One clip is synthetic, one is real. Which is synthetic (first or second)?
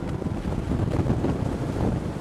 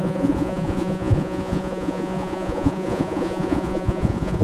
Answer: second